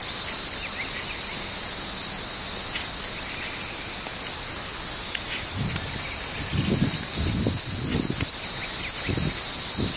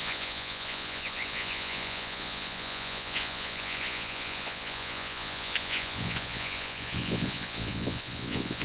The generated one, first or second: second